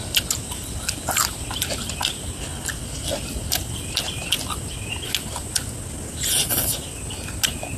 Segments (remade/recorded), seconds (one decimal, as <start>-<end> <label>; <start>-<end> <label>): 0.0-7.8 recorded